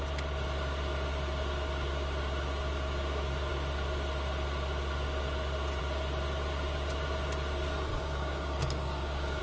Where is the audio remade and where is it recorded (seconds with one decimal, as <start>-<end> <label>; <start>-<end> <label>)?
0.0-7.9 recorded; 7.9-9.4 remade